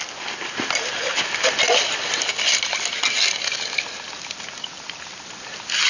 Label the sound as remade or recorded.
recorded